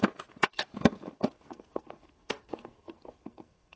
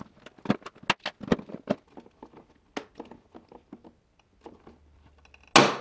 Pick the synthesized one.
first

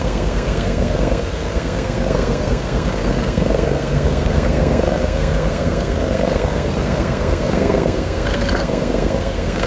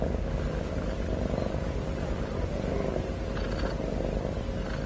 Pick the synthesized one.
first